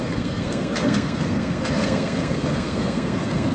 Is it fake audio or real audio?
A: fake